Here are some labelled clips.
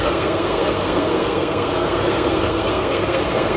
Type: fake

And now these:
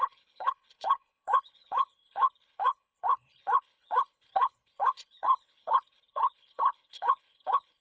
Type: fake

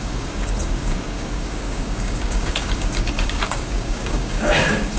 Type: fake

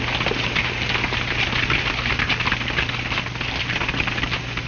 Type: real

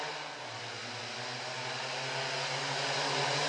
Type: real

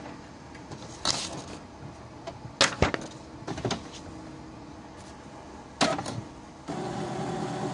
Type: real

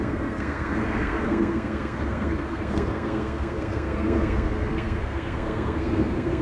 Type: fake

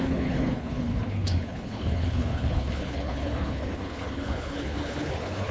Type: fake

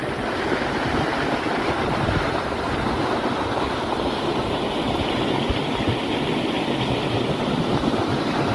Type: real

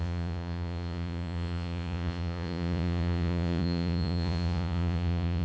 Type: fake